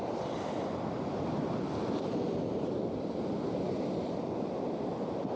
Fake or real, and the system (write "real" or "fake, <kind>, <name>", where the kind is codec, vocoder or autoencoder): real